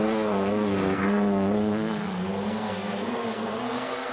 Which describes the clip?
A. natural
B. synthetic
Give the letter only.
B